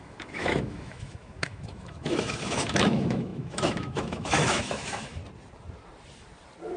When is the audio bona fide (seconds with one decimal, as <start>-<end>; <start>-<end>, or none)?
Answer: 5.2-6.8